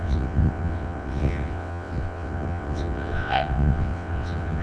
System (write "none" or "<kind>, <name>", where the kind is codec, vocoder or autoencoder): vocoder, WaveNeXt